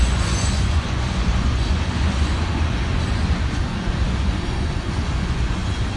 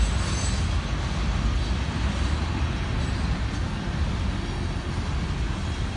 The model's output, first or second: first